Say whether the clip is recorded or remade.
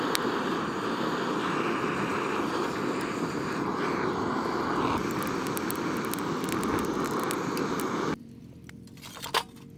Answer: recorded